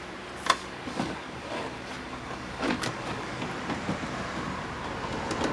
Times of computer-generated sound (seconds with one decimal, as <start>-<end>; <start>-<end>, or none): 0.6-3.4